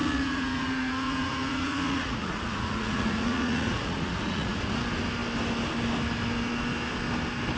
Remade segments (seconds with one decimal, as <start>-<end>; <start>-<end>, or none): 0.0-4.6